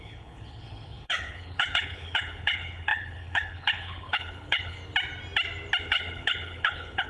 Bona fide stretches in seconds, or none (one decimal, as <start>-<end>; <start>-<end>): 4.8-5.8